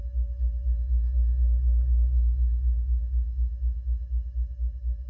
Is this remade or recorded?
recorded